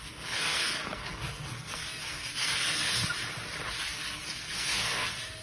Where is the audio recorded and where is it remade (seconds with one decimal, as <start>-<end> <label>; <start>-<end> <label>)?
0.0-2.9 remade; 2.9-3.8 recorded; 3.8-5.4 remade